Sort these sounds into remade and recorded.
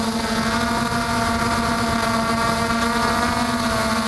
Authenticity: recorded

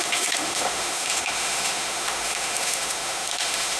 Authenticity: remade